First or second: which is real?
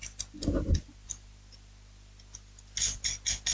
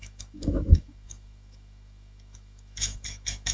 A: first